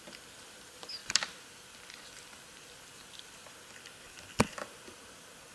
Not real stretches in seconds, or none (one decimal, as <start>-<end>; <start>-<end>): 1.0-3.5